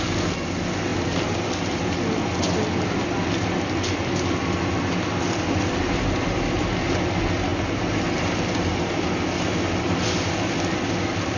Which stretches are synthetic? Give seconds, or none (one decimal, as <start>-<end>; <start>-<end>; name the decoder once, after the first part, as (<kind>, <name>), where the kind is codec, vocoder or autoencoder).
none